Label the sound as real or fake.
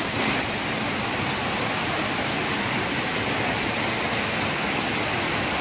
real